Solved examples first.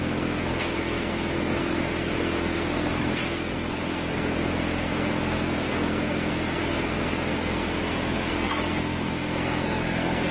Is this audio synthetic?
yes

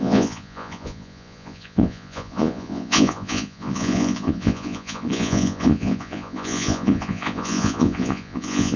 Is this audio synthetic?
yes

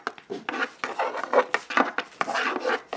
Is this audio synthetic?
no